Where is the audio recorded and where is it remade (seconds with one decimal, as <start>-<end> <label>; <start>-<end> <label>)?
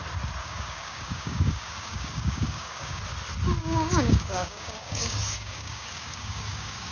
0.0-0.4 recorded; 0.4-3.0 remade; 3.0-3.6 recorded; 3.6-6.9 remade